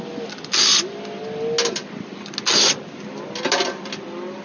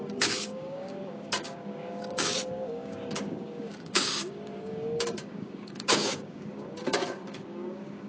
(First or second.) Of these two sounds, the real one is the first